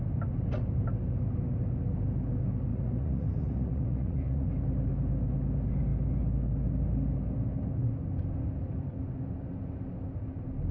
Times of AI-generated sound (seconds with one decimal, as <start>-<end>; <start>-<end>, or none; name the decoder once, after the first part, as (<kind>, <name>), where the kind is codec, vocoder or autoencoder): 2.7-4.5 (vocoder, Vocos)